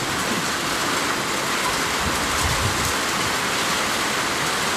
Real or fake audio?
real